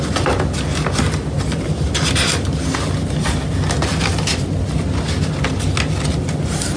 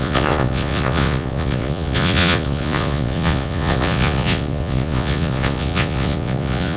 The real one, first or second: first